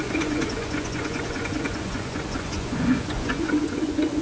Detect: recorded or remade remade